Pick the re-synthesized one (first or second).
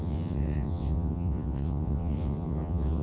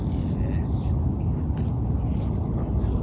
first